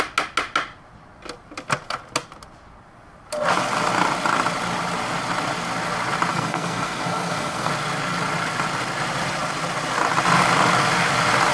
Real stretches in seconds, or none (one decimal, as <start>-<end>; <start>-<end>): 0.0-6.3; 7.7-11.5